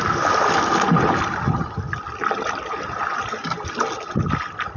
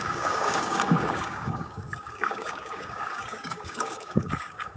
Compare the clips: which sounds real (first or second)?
first